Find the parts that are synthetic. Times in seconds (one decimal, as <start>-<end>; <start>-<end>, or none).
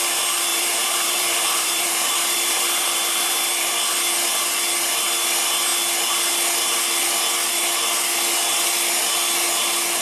0.5-3.4